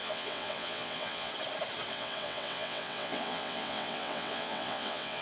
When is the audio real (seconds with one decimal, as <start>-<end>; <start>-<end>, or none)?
1.3-1.9